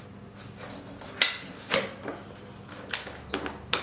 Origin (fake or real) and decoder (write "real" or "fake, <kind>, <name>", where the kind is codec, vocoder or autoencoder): real